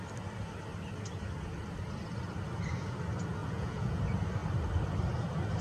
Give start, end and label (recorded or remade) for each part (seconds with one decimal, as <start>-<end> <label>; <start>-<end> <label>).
0.0-3.4 recorded; 3.4-4.0 remade; 4.0-5.6 recorded